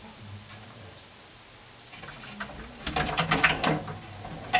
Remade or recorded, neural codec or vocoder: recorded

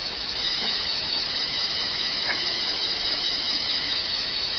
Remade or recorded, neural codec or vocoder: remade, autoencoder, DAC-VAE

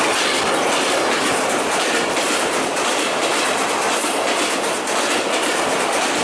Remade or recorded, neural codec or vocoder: recorded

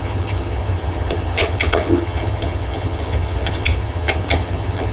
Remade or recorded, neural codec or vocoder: remade, vocoder, HiFi-GAN